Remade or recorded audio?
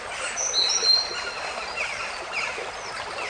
recorded